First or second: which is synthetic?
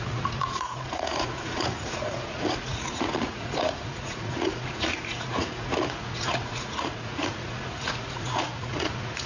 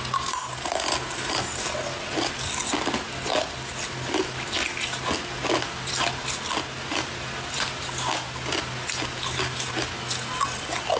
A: first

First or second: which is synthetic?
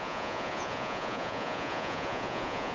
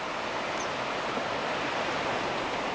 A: first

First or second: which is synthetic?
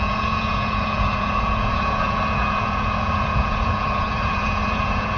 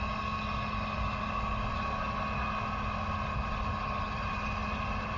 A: first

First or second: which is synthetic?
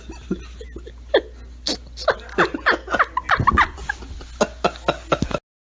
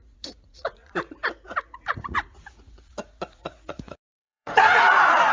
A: second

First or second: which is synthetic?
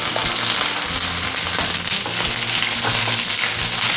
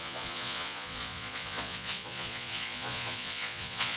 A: second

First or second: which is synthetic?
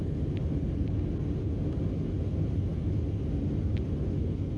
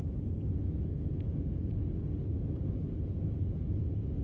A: second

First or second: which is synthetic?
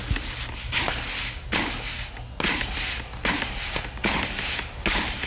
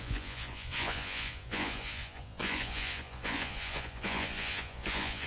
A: second